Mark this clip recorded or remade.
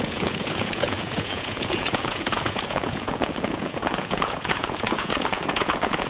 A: remade